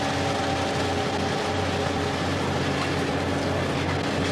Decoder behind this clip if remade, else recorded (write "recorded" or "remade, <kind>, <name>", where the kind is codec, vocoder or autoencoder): recorded